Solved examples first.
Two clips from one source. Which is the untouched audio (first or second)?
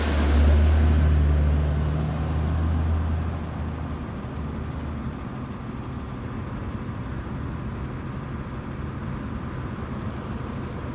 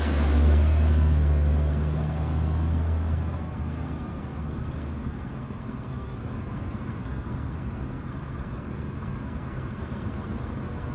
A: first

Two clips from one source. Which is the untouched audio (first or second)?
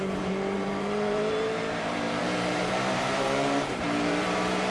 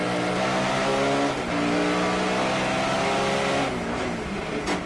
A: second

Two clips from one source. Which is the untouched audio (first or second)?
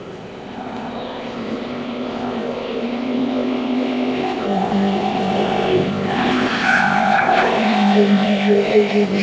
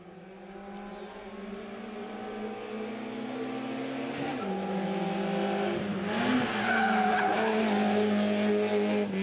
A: second